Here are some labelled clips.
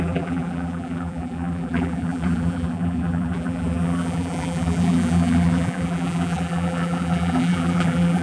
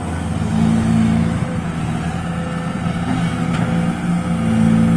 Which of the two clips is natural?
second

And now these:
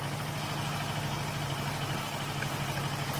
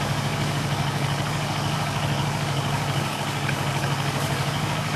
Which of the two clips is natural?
first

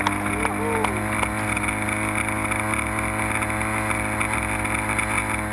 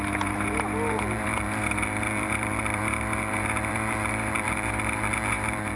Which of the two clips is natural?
first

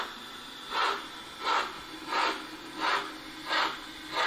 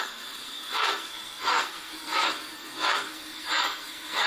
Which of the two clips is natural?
first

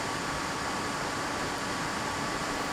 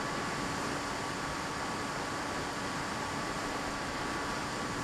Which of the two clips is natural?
second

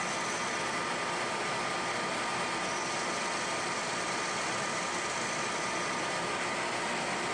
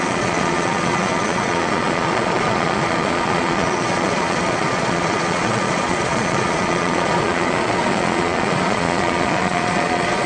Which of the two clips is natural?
first